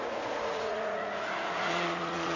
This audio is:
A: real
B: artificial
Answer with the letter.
B